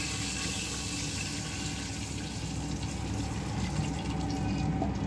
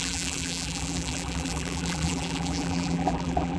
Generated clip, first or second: second